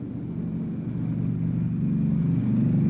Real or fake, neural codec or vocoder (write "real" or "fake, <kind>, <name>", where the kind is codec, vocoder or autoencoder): real